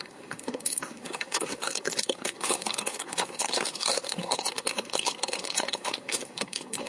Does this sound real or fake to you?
fake